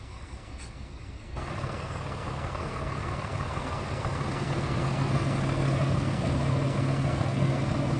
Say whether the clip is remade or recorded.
remade